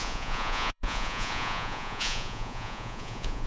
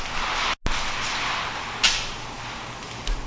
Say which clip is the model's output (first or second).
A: first